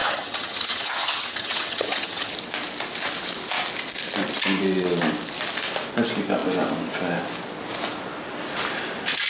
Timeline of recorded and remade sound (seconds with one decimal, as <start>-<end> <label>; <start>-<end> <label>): 0.0-2.3 remade; 2.3-9.3 recorded